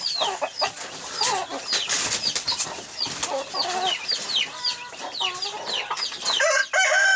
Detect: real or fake real